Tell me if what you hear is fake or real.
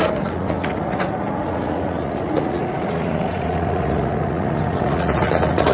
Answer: fake